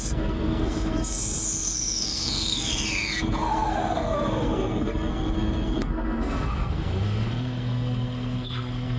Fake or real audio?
fake